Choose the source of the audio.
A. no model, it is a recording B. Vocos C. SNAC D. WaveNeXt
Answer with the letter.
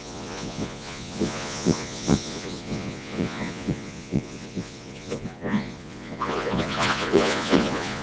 B